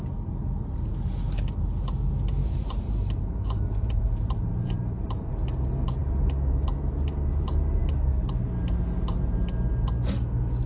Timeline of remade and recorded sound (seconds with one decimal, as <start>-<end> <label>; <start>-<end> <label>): 0.0-2.4 recorded; 2.4-5.3 remade; 5.3-10.7 recorded